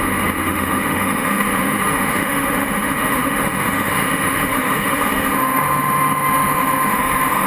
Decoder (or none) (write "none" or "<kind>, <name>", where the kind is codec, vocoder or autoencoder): autoencoder, DAC-VAE